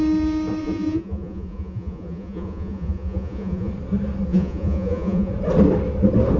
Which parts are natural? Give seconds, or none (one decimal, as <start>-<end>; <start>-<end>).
0.0-0.6; 3.7-4.3; 5.3-6.4